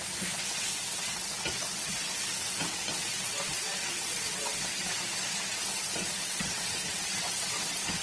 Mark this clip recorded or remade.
remade